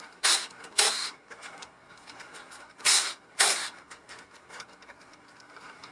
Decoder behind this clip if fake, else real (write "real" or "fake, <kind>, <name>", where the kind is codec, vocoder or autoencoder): fake, codec, SNAC